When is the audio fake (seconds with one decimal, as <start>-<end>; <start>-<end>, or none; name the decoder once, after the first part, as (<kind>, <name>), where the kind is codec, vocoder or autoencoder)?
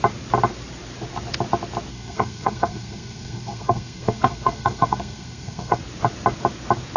1.9-5.8 (codec, SNAC)